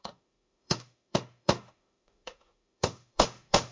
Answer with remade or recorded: remade